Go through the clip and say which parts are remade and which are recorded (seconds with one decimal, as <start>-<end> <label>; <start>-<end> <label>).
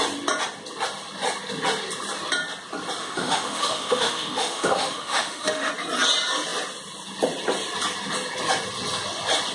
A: 0.0-3.0 recorded; 3.0-5.7 remade; 5.7-9.5 recorded